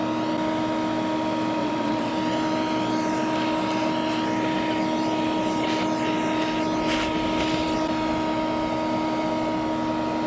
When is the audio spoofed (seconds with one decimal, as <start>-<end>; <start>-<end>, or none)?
1.6-2.1

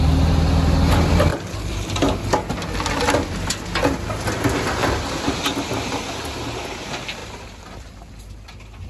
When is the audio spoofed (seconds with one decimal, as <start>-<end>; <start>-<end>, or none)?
1.3-2.0; 4.8-5.3; 7.2-8.2

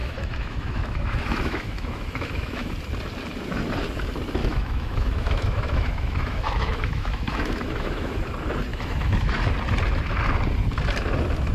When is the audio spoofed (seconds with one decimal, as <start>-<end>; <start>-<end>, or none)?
0.0-2.7; 4.4-8.2; 8.7-9.4

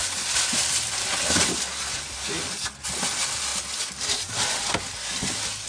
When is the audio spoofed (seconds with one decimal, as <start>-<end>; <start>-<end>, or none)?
none

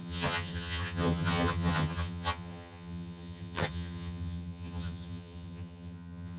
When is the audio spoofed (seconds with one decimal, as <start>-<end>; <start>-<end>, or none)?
0.0-6.4

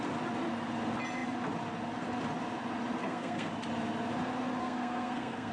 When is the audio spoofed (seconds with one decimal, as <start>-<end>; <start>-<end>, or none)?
3.0-3.5; 4.6-5.5